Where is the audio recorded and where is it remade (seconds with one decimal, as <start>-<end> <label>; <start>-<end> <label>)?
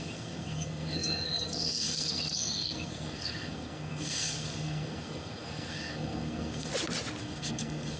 0.0-6.7 remade; 6.7-7.2 recorded; 7.2-8.0 remade